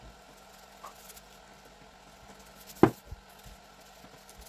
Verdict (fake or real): real